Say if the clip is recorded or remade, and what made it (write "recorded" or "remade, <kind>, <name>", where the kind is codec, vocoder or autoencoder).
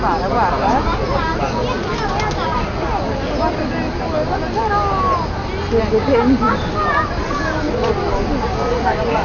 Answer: recorded